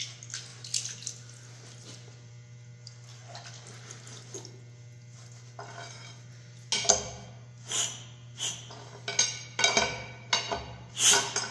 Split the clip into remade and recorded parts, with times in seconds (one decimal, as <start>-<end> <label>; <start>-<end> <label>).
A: 0.0-11.5 recorded